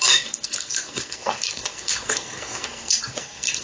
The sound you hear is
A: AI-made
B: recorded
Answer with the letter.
A